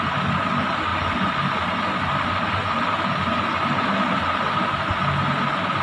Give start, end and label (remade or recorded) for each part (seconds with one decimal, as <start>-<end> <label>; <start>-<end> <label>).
0.0-5.8 recorded